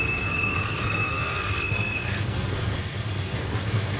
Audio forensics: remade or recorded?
remade